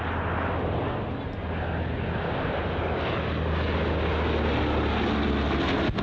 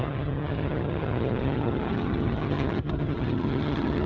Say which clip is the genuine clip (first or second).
first